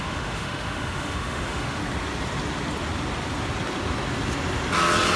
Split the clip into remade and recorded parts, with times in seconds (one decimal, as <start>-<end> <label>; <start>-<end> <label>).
0.0-1.8 remade; 1.8-5.2 recorded